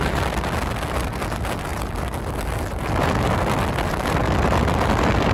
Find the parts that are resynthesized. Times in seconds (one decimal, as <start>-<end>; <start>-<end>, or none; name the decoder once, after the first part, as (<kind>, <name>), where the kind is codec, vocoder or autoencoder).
none

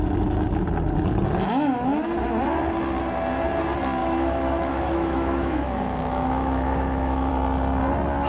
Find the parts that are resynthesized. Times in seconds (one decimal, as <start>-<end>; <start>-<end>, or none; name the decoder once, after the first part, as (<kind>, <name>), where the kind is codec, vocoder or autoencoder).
4.0-7.3 (autoencoder, DAC-VAE)

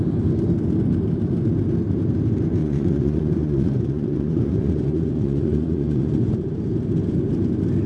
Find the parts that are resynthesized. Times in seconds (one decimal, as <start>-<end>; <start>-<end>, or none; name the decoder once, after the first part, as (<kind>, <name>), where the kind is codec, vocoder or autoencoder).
2.6-6.3 (vocoder, Vocos)

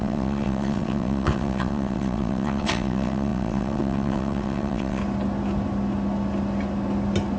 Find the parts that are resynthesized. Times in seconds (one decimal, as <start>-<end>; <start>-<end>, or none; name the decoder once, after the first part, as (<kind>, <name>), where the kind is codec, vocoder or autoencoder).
0.0-5.0 (vocoder, WaveNeXt)

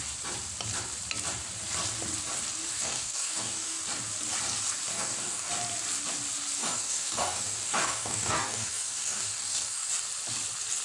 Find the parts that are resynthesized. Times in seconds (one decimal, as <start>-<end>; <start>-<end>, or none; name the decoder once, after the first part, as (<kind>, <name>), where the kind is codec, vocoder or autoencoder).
2.6-3.8 (codec, DAC); 4.9-5.5; 6.6-9.9

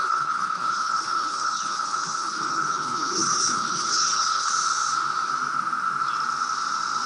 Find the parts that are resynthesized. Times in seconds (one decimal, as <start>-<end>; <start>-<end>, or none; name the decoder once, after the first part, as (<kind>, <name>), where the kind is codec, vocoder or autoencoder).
0.0-4.5 (codec, HILCodec)